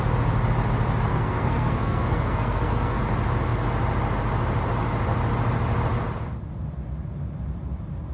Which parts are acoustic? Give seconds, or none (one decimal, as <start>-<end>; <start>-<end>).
0.0-1.1; 3.0-8.1